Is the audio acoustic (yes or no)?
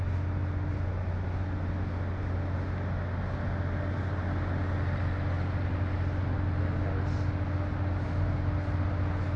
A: yes